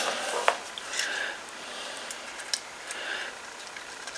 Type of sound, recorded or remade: recorded